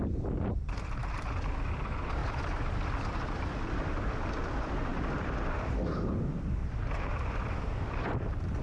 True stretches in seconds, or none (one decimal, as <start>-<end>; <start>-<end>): 2.2-3.0